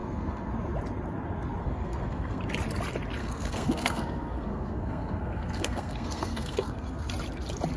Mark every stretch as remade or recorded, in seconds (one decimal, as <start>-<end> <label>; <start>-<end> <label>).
0.0-0.5 remade; 0.5-1.6 recorded; 1.6-2.4 remade; 2.4-3.2 recorded; 3.2-7.1 remade; 7.1-7.8 recorded